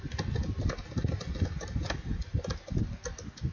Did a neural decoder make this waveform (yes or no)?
no